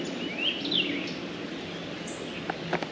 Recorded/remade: recorded